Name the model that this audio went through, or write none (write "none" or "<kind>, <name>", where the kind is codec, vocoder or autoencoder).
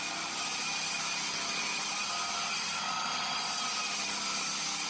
none